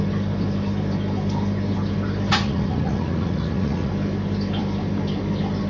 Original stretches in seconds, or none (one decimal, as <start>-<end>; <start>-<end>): 0.0-2.3; 3.9-5.7